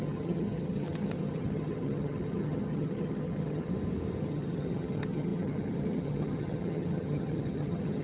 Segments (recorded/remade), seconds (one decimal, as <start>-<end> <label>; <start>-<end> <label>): 0.0-3.7 remade; 3.7-4.2 recorded; 4.2-8.0 remade